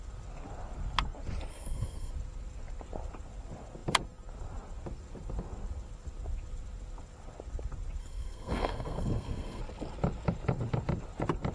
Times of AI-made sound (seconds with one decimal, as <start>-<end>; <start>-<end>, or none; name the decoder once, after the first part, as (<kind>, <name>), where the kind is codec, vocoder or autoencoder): 1.5-2.1 (codec, SNAC); 8.0-9.6